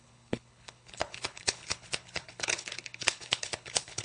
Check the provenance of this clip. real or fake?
fake